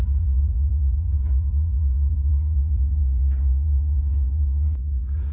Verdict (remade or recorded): remade